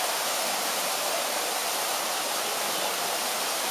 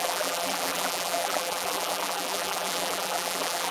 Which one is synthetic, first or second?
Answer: second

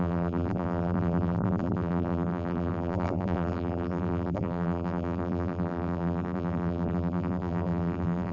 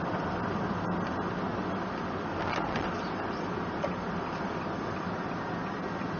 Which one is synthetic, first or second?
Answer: first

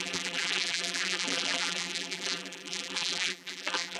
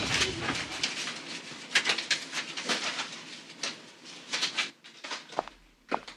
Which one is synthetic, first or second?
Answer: first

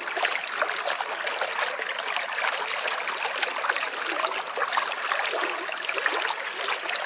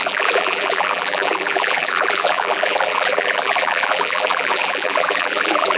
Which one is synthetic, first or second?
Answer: second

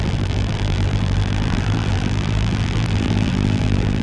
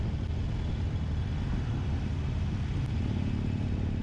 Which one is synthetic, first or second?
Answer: first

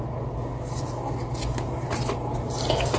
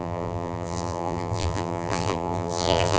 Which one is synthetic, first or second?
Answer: second